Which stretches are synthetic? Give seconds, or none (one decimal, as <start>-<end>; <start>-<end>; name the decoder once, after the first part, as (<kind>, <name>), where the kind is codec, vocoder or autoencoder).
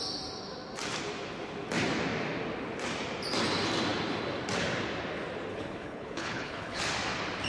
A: 5.5-6.8 (codec, HILCodec)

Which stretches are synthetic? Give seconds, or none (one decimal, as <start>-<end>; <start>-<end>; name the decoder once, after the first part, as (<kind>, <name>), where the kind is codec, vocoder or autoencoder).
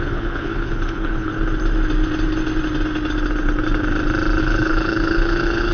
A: 0.0-1.3 (codec, HILCodec); 4.4-5.7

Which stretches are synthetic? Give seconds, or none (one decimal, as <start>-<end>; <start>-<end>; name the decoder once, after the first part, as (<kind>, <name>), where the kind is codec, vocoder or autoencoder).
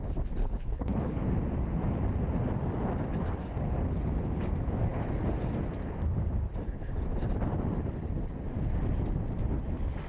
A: 0.4-1.2 (codec, HILCodec)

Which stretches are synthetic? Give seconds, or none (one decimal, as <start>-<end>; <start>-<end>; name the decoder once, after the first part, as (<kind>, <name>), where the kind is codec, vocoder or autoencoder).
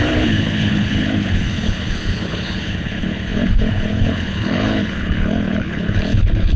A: 0.0-6.6 (codec, HILCodec)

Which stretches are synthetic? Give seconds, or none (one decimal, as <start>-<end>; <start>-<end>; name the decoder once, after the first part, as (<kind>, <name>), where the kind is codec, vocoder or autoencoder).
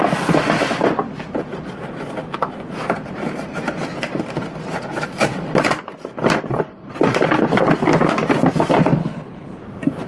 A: 9.0-9.6 (codec, HILCodec)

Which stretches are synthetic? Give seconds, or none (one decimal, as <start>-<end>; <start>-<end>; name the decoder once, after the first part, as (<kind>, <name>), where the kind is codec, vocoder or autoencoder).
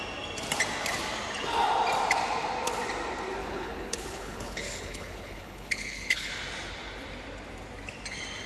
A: 3.4-6.3 (codec, HILCodec)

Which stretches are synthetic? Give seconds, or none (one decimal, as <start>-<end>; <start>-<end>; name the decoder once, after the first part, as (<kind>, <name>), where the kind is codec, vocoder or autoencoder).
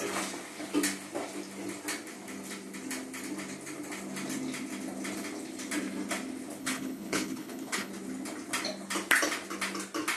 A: 6.6-7.9 (codec, HILCodec)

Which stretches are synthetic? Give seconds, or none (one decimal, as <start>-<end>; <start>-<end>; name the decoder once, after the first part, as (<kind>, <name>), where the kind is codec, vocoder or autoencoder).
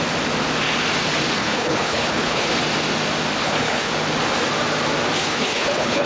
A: 1.4-2.5 (codec, HILCodec); 3.4-3.9; 5.2-6.1